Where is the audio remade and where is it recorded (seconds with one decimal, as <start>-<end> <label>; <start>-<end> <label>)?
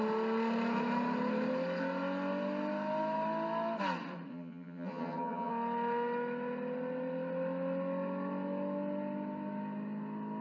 0.0-4.3 recorded; 4.3-5.5 remade; 5.5-10.4 recorded